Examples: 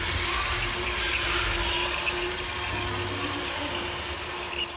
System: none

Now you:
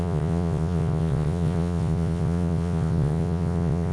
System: vocoder, Vocos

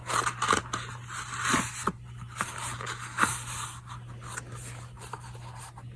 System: none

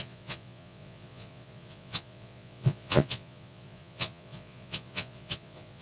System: vocoder, Vocos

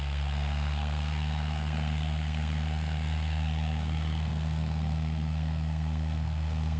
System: codec, SNAC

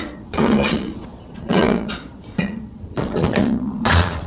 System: vocoder, Vocos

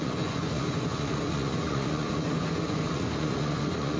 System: vocoder, Vocos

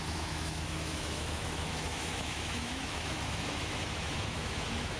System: autoencoder, DAC-VAE